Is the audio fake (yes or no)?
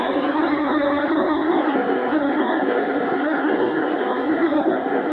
yes